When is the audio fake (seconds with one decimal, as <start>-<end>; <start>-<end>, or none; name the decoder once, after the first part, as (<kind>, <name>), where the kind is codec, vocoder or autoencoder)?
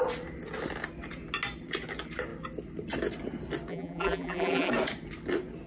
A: 3.7-4.7 (vocoder, BigVGAN v2)